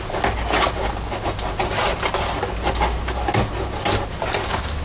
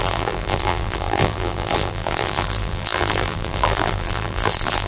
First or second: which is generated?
second